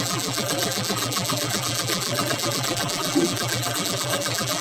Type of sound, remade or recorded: remade